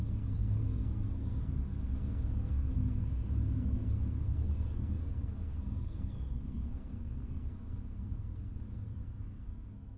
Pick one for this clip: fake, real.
fake